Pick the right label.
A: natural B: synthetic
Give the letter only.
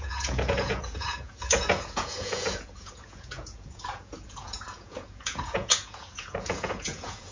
B